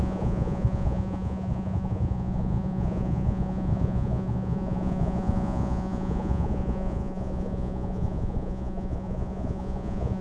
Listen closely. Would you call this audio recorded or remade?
remade